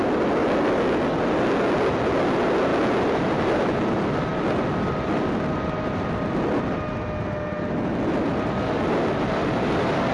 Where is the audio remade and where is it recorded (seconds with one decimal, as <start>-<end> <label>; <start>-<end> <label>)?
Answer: 0.0-10.1 recorded